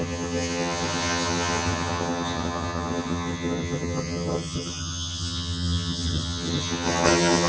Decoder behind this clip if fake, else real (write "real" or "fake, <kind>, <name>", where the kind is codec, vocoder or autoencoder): fake, vocoder, HiFi-GAN